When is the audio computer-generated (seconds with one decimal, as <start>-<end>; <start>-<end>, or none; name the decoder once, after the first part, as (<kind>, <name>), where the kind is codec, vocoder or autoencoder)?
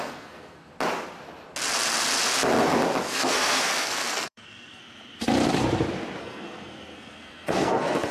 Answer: 0.0-0.7 (codec, SNAC); 3.0-4.8; 6.2-8.1